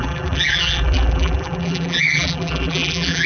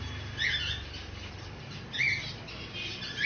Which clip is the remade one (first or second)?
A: first